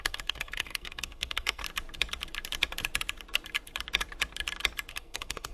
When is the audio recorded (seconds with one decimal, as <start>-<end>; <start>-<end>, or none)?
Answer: 1.6-4.9